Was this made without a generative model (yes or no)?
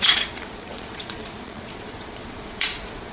no